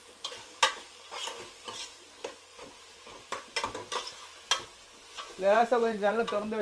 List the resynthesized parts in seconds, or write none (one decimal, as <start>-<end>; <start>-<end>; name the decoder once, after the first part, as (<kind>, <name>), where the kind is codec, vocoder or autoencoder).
4.8-6.1 (vocoder, Vocos)